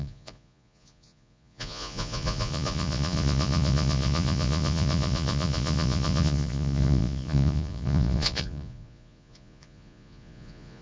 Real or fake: fake